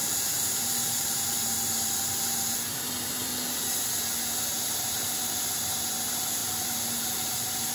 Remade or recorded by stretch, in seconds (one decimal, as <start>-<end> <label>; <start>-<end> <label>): 0.0-3.3 remade; 3.3-4.5 recorded; 4.5-7.7 remade